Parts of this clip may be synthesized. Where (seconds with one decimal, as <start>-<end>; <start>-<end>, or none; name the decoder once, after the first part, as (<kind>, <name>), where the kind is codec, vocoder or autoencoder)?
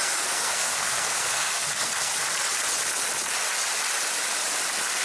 0.0-2.1 (codec, SNAC)